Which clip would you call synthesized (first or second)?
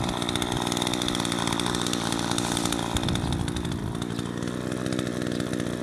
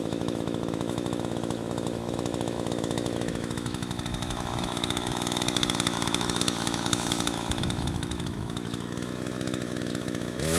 second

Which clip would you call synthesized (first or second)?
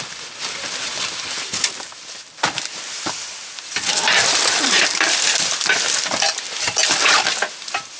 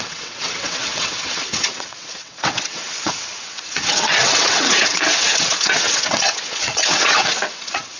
second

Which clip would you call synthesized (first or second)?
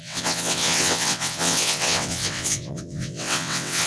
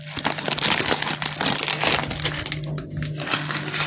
first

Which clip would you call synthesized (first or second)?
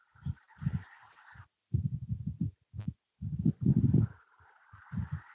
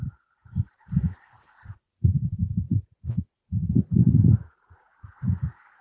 second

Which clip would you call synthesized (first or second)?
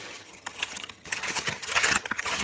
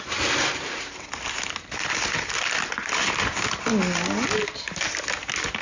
first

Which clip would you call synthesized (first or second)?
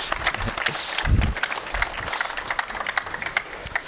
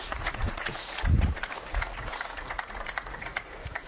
second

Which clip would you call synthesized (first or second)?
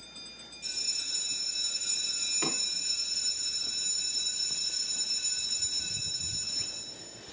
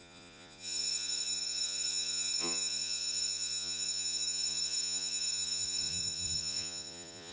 second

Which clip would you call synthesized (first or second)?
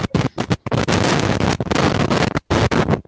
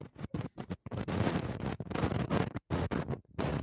second